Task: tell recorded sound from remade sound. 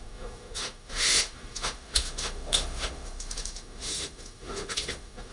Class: remade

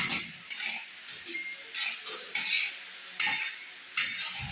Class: recorded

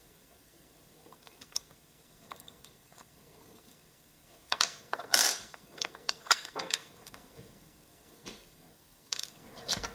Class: remade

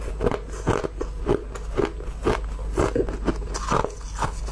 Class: recorded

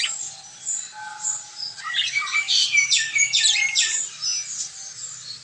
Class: recorded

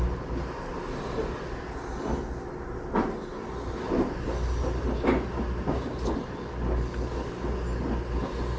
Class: recorded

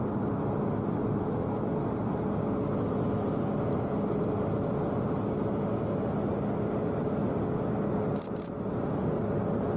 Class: recorded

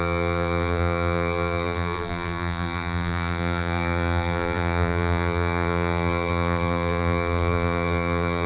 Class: remade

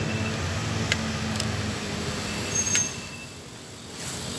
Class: recorded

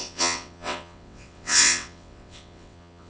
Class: remade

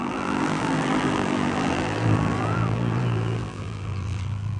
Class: remade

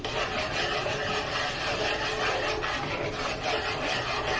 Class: recorded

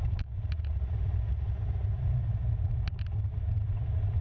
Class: recorded